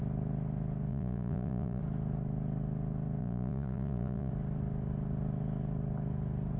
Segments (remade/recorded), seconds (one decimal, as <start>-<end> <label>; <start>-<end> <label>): 0.0-0.9 recorded; 0.9-1.8 remade; 1.8-3.2 recorded; 3.2-4.3 remade; 4.3-6.6 recorded